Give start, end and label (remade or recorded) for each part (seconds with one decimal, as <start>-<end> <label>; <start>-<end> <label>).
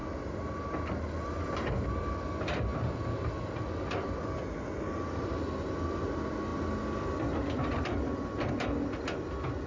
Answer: 0.0-9.7 recorded